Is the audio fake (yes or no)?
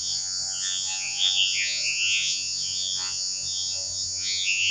yes